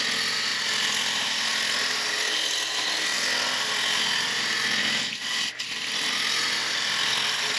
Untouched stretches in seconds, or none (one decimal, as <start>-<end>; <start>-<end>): 0.0-7.6